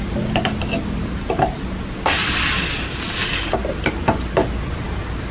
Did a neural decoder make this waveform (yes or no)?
no